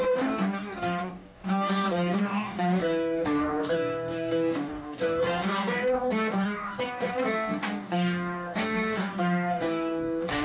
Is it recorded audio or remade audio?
remade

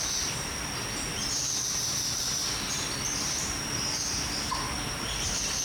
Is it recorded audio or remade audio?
recorded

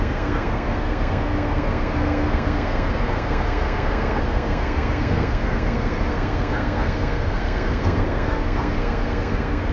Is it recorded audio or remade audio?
remade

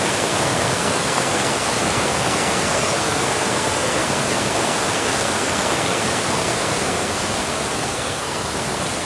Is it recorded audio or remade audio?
remade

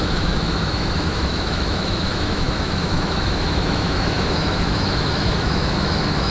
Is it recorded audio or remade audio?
remade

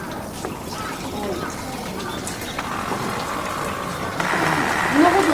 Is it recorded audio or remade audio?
recorded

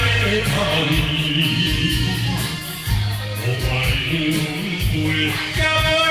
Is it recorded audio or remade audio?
remade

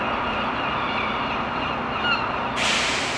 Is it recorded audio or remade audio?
recorded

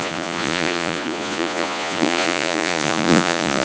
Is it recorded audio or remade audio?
remade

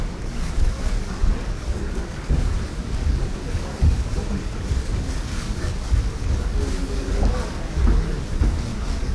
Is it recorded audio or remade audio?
remade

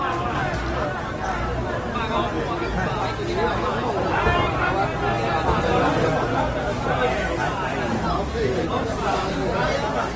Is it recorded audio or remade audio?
recorded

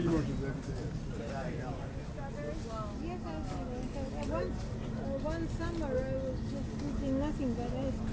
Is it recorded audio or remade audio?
recorded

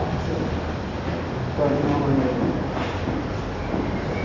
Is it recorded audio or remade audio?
recorded